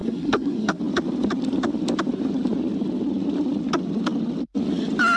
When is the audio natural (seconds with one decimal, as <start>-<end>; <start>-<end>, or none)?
0.8-5.2